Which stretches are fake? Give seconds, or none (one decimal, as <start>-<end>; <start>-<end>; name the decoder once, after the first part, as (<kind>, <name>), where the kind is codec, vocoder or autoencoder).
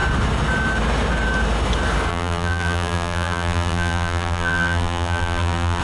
2.1-5.8 (vocoder, BigVGAN v2)